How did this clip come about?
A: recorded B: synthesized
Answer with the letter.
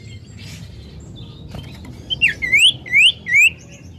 A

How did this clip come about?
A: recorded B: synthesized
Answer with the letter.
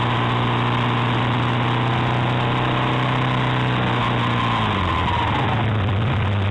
A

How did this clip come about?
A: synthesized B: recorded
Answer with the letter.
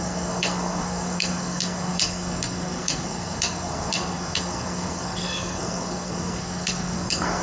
A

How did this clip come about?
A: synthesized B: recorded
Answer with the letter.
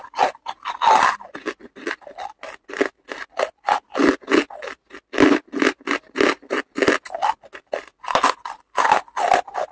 B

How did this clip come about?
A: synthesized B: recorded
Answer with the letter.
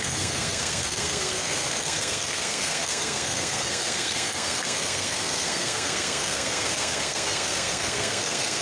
A